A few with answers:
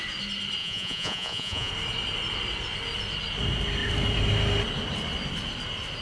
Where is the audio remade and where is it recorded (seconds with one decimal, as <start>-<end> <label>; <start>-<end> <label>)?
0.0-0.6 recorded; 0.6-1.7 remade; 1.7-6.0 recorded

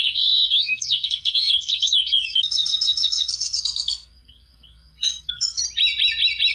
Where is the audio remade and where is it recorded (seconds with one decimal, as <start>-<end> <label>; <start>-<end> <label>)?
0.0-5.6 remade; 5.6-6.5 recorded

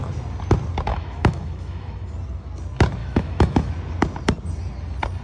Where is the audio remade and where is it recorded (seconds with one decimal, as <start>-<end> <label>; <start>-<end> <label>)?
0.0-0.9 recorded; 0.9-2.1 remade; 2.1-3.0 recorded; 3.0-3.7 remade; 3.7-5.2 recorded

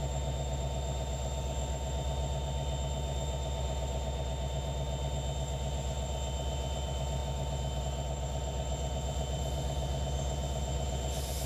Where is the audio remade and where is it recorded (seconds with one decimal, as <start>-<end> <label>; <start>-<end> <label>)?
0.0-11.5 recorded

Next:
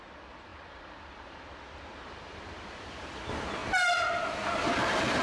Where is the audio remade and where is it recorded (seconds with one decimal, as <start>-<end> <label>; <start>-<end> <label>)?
0.0-0.5 recorded; 0.5-1.4 remade; 1.4-1.9 recorded; 1.9-3.1 remade; 3.1-5.2 recorded